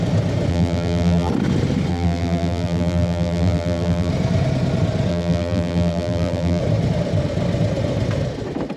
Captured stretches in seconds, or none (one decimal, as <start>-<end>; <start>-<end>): 0.0-0.5; 1.3-1.9; 4.1-5.1; 6.6-8.8